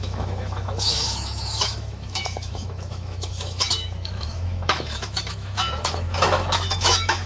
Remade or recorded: remade